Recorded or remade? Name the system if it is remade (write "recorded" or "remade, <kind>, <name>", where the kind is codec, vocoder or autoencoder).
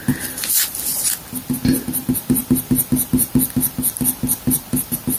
recorded